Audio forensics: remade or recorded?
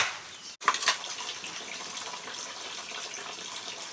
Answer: recorded